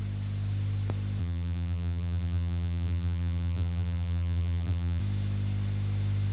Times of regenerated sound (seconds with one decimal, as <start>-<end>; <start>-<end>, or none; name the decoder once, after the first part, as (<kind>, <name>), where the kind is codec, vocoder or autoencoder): 1.2-5.0 (vocoder, BigVGAN v2)